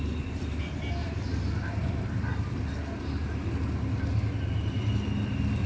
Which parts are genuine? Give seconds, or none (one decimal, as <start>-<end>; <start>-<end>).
0.0-1.0; 2.1-5.7